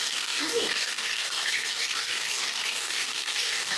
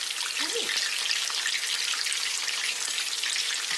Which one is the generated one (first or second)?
first